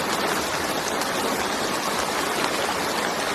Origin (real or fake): real